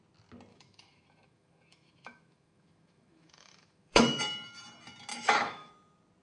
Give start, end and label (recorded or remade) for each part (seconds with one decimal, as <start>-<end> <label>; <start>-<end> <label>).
0.0-0.5 recorded; 0.5-4.2 remade; 4.2-5.1 recorded; 5.1-5.7 remade; 5.7-6.2 recorded